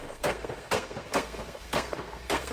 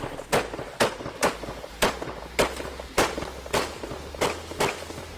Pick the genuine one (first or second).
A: second